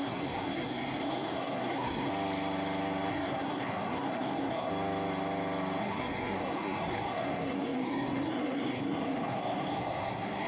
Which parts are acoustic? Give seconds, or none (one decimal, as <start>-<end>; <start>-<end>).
2.1-3.1; 4.7-5.8